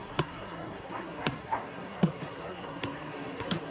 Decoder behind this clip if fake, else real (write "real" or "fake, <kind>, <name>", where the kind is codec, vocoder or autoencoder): fake, codec, SNAC